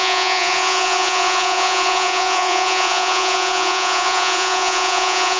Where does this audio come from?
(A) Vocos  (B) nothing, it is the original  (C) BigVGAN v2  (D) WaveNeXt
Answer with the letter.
A